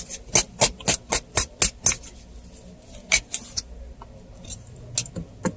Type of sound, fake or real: real